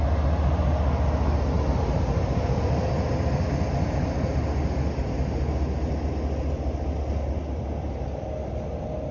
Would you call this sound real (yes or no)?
yes